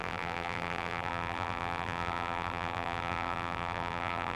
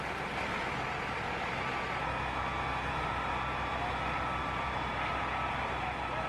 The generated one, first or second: first